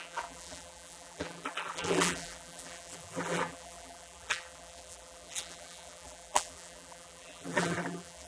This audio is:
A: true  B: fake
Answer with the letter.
B